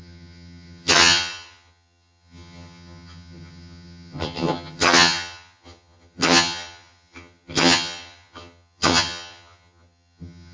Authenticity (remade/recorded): remade